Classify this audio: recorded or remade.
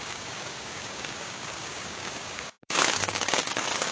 remade